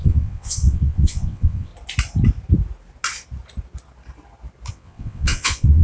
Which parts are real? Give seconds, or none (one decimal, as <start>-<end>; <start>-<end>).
1.7-4.7